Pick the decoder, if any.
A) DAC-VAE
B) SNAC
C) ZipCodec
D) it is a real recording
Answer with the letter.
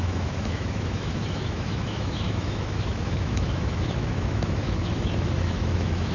A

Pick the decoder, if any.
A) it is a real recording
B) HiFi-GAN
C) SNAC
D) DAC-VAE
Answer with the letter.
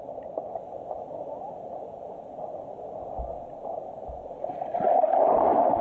A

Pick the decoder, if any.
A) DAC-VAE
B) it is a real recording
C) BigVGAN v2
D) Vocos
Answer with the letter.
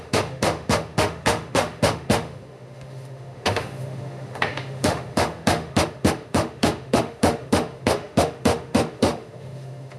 A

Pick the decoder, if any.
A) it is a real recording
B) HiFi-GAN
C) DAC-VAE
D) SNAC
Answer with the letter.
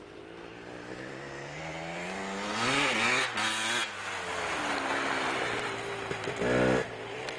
A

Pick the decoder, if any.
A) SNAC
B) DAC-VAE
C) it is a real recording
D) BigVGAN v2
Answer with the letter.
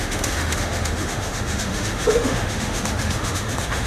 B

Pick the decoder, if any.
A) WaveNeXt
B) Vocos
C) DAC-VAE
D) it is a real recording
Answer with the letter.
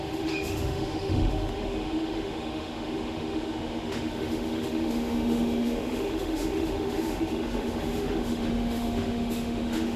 C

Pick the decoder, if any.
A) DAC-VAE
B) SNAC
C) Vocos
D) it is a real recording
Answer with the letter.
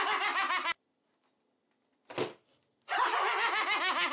D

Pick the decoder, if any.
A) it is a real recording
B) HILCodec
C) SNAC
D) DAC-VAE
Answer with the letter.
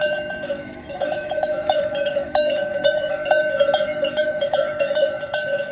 D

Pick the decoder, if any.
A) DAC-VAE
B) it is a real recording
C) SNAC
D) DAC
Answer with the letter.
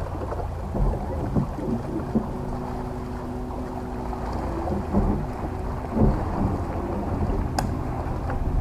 B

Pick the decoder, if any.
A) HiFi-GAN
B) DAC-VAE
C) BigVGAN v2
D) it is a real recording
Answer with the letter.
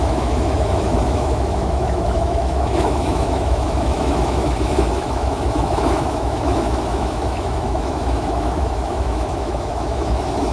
B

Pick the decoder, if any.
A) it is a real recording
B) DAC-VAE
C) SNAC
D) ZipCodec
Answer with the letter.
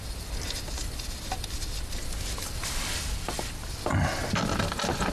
A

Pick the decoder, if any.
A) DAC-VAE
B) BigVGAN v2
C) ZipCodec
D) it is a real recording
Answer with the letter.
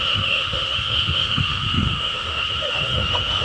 A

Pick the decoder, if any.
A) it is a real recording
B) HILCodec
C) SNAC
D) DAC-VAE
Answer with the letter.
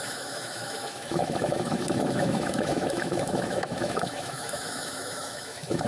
D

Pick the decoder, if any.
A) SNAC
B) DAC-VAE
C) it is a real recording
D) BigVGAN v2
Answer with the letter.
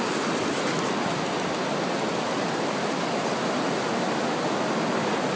C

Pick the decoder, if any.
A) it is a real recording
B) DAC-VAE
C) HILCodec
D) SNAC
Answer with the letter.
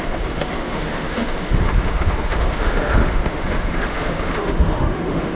B